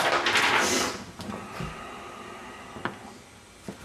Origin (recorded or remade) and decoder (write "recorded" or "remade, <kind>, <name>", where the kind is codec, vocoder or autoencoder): recorded